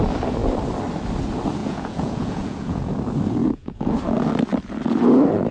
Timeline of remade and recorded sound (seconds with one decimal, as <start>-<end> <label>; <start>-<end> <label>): 0.0-1.6 recorded; 1.6-2.9 remade; 2.9-3.4 recorded; 3.4-3.9 remade; 3.9-5.5 recorded